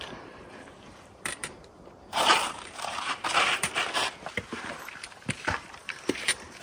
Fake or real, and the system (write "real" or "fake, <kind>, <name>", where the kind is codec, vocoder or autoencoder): fake, vocoder, BigVGAN v2